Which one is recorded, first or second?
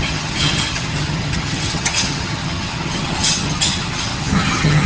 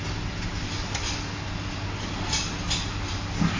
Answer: second